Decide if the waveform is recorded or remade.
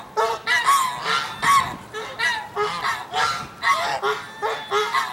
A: recorded